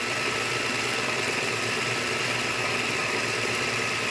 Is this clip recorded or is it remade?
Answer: recorded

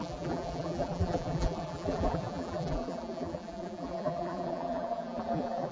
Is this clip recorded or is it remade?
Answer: remade